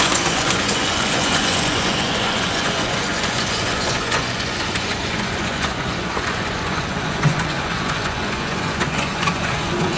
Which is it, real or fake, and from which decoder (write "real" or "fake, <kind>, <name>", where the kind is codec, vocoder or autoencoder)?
fake, vocoder, Vocos